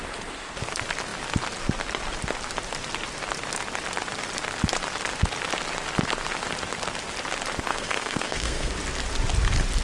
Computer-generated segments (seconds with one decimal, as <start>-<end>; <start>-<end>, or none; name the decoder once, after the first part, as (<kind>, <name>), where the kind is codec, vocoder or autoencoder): 7.7-8.7 (codec, SNAC)